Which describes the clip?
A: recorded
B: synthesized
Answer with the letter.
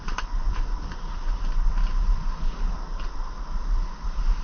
A